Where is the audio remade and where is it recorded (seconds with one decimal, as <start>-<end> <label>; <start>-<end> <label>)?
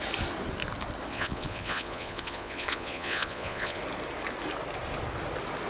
0.0-1.1 recorded; 1.1-3.8 remade; 3.8-5.7 recorded